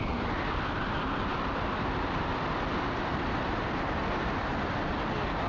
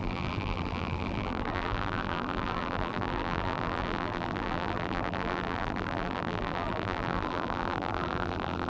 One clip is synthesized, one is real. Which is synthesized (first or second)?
second